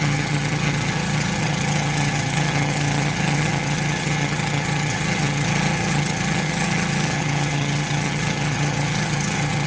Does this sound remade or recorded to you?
remade